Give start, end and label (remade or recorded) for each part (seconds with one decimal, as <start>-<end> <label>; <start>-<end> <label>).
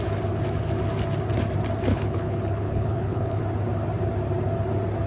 0.0-1.9 recorded; 1.9-3.4 remade; 3.4-5.1 recorded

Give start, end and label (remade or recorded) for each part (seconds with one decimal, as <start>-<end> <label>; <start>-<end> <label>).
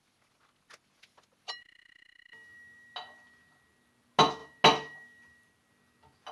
0.0-6.3 recorded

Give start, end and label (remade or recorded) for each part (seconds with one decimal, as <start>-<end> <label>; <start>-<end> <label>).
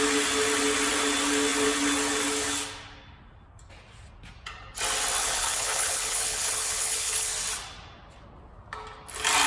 0.0-5.2 recorded; 5.2-7.3 remade; 7.3-9.5 recorded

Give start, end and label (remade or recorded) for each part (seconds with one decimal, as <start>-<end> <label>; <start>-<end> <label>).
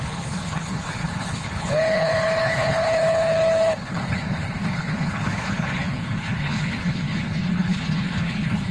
0.0-8.7 remade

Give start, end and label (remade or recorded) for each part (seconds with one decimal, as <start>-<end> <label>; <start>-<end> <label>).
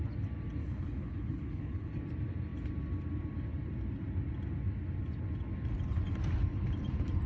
0.0-0.6 recorded; 0.6-1.9 remade; 1.9-7.3 recorded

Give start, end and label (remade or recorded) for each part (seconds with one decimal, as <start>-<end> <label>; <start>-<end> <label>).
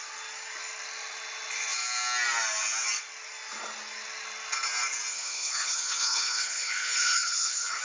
0.0-5.1 recorded; 5.1-7.8 remade